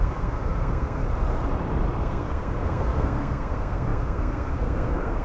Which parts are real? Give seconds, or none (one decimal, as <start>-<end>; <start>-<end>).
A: 1.0-2.0